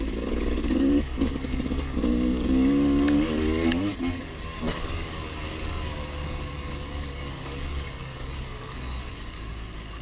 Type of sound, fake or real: fake